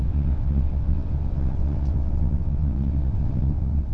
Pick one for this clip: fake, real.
fake